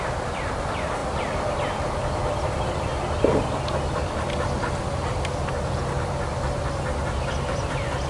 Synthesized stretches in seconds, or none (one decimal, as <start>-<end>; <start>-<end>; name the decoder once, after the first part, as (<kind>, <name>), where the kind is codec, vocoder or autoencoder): 0.0-2.9 (vocoder, BigVGAN v2); 6.8-8.1